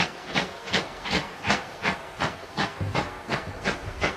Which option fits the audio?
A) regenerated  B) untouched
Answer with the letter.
A